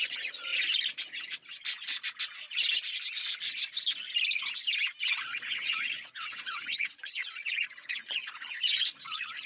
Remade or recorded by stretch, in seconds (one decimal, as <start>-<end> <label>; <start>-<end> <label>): 0.0-0.5 remade; 0.5-5.1 recorded; 5.1-9.5 remade